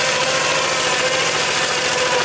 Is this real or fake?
real